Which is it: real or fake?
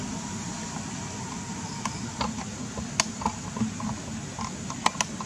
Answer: real